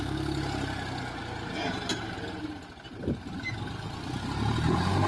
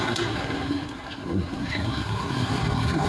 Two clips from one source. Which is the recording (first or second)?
first